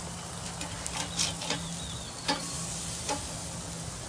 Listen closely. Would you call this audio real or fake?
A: real